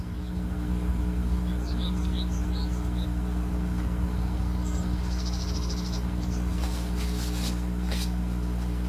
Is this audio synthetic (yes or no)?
yes